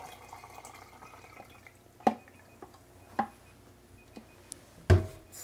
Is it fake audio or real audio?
real